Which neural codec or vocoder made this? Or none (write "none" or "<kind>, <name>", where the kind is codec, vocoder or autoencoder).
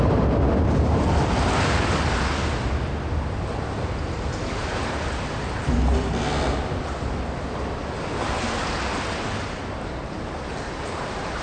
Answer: none